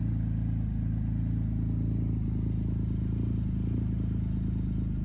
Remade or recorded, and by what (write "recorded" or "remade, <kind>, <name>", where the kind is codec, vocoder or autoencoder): recorded